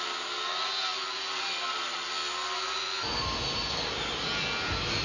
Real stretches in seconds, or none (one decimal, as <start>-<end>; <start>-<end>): 0.0-5.0